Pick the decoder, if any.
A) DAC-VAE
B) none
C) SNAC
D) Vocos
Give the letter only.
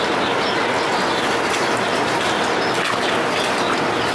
B